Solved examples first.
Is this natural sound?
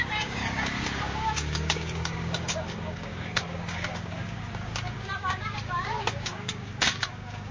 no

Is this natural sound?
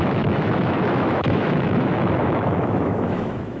no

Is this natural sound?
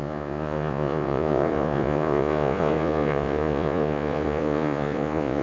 no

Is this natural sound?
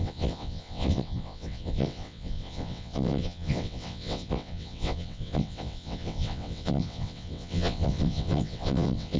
no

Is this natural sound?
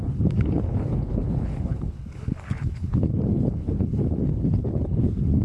no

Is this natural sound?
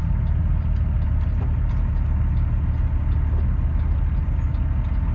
yes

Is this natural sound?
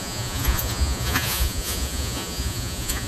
no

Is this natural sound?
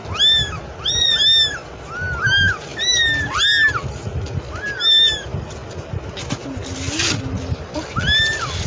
yes